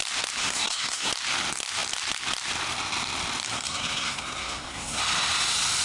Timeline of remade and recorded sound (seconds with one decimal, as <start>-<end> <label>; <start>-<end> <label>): 0.0-0.4 recorded; 0.4-1.1 remade; 1.1-3.5 recorded; 3.5-5.0 remade; 5.0-5.8 recorded

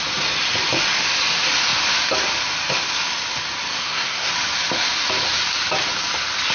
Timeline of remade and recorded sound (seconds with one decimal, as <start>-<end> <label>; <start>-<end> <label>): 0.0-3.8 recorded; 3.8-4.3 remade; 4.3-6.5 recorded

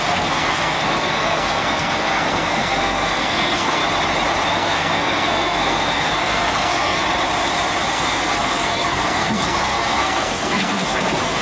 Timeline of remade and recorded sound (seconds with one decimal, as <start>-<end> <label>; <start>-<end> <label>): 0.0-3.8 remade; 3.8-4.5 recorded; 4.5-7.0 remade; 7.0-7.9 recorded; 7.9-11.4 remade

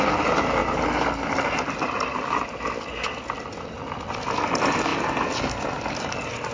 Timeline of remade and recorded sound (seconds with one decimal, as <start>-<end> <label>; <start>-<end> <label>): 0.0-6.5 recorded

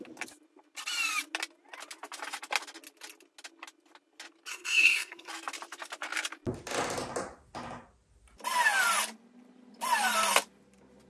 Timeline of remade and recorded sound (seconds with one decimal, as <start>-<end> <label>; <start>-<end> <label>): 0.0-4.5 recorded; 4.5-5.3 remade; 5.3-11.1 recorded

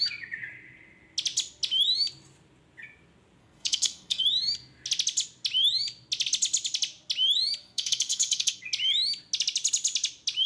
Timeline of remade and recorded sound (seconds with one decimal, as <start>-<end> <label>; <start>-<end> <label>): 0.0-3.4 recorded; 3.4-4.2 remade; 4.2-7.6 recorded; 7.6-8.6 remade; 8.6-10.5 recorded